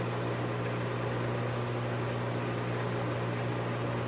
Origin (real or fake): real